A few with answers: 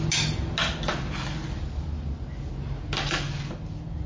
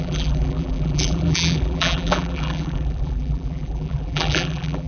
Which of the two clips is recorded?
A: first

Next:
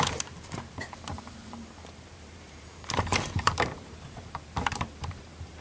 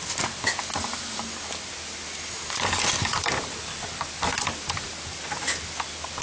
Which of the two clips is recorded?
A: second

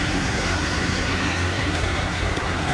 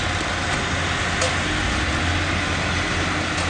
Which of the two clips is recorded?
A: second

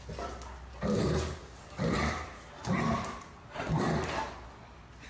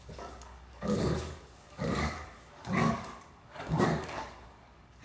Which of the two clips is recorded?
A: first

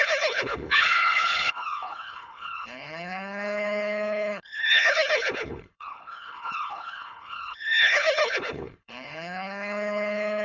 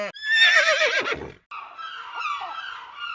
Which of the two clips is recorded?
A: second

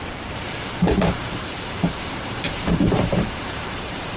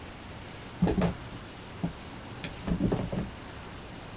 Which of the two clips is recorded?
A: second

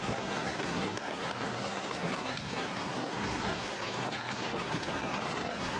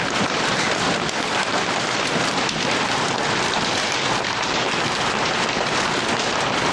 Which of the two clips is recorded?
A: second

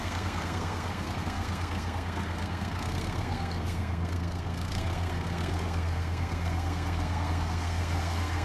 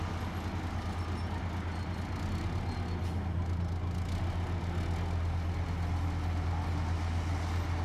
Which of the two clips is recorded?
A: second